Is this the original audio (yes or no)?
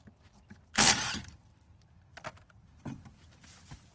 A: yes